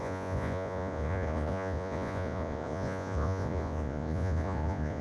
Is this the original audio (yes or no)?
no